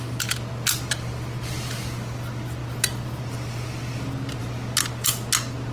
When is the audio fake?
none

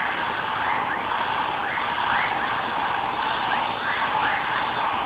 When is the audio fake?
none

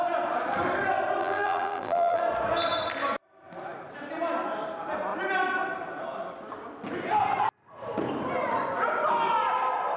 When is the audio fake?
1.2-2.2 (vocoder, BigVGAN v2)

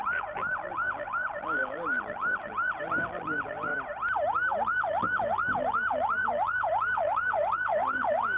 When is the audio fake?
0.0-3.7 (vocoder, BigVGAN v2); 4.6-8.4

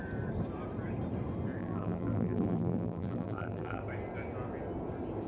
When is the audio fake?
1.6-3.8 (vocoder, BigVGAN v2)

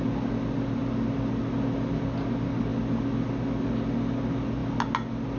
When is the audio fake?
none

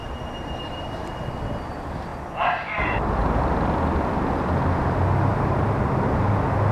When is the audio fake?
0.0-1.0 (vocoder, BigVGAN v2); 5.3-6.3

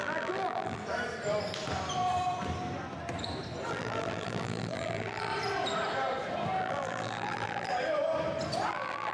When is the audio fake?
0.0-0.8 (vocoder, BigVGAN v2); 3.7-5.3; 6.6-7.7; 8.7-9.1